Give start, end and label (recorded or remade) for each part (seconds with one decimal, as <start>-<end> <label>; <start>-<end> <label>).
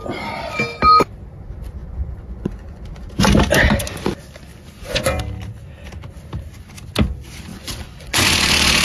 0.0-1.8 recorded; 1.8-2.8 remade; 2.8-4.5 recorded; 4.5-5.2 remade; 5.2-7.5 recorded; 7.5-8.8 remade